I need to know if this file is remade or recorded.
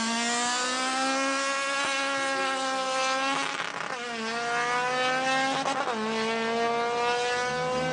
recorded